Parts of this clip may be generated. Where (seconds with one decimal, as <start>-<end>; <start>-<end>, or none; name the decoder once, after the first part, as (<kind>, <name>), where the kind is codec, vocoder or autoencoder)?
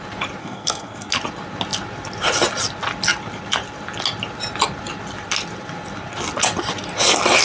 0.4-1.1 (codec, SNAC)